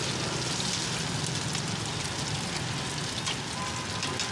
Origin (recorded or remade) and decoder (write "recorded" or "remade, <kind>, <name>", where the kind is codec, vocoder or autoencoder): recorded